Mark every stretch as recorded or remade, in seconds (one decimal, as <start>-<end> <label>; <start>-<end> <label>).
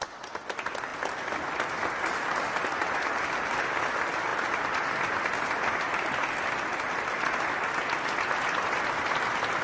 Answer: 0.0-9.6 recorded